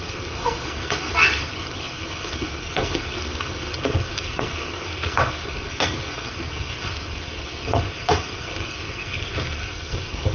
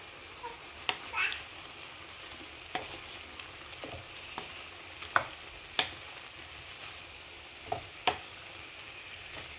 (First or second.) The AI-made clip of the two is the first